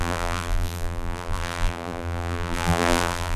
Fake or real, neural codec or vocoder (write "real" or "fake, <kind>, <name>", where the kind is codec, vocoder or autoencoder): fake, vocoder, BigVGAN v2